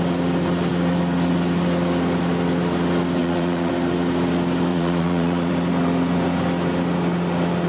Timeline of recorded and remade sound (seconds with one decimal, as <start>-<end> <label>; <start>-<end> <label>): 0.0-3.2 recorded; 3.2-3.7 remade; 3.7-4.7 recorded; 4.7-5.5 remade; 5.5-7.7 recorded